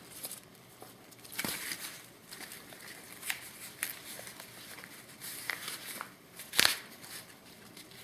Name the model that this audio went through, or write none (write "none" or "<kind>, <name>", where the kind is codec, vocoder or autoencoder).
vocoder, BigVGAN v2